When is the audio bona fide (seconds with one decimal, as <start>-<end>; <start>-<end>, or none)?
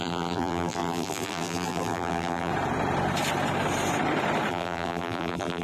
2.5-4.5